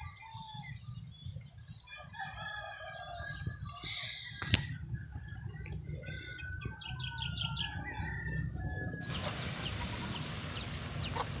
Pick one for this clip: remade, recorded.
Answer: recorded